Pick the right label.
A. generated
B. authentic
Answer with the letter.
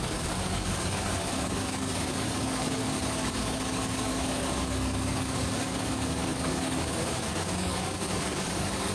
A